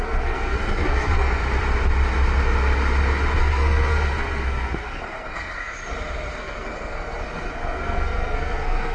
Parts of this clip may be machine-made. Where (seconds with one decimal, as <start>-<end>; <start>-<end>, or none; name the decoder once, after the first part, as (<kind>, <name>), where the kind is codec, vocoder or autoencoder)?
0.0-1.4 (codec, SNAC); 3.4-5.8; 6.3-8.9